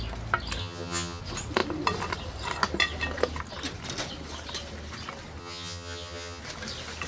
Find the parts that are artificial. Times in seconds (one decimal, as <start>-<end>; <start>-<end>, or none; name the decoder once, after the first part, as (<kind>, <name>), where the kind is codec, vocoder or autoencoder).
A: 0.6-1.2 (vocoder, HiFi-GAN); 5.4-6.4